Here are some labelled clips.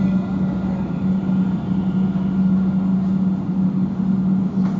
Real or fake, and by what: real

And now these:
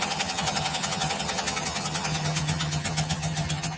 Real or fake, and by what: fake, vocoder, HiFi-GAN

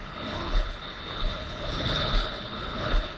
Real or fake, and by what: fake, codec, HILCodec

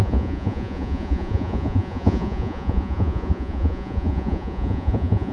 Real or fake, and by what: fake, vocoder, Vocos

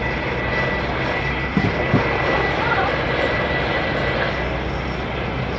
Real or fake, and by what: real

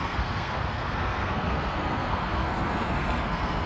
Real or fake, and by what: fake, codec, SNAC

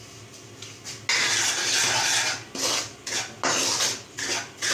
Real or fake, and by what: real